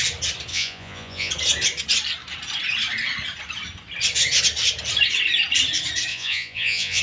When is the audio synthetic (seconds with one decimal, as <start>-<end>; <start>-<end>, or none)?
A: 0.5-1.3; 6.1-7.0